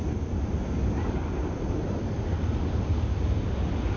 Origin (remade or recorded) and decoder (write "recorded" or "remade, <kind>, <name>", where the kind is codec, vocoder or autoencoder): recorded